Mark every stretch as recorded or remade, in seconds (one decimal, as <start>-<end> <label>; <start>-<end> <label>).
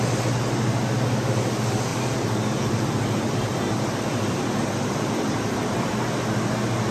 0.0-1.9 recorded; 1.9-6.0 remade; 6.0-6.9 recorded